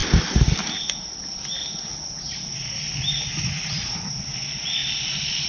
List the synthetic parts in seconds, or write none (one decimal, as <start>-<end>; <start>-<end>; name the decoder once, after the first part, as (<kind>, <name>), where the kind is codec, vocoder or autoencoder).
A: none